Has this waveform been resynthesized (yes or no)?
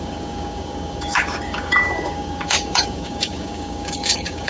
yes